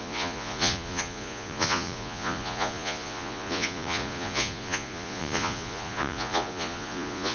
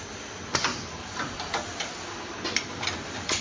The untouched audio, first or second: second